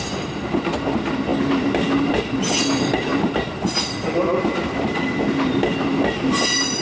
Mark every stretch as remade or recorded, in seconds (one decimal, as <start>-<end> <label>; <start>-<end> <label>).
0.0-6.8 recorded